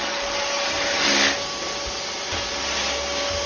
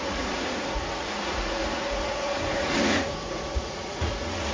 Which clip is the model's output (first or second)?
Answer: second